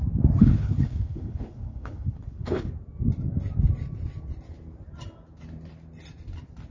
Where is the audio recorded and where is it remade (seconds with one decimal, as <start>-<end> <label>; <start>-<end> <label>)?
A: 0.0-0.4 recorded; 0.4-2.7 remade; 2.7-6.7 recorded